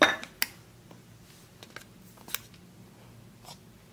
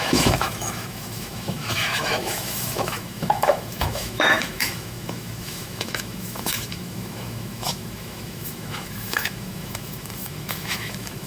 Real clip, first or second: first